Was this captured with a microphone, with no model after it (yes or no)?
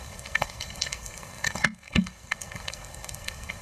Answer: no